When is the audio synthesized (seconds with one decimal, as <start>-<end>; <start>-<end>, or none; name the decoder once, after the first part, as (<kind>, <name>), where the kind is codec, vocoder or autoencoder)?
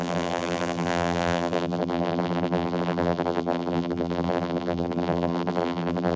0.0-6.2 (vocoder, BigVGAN v2)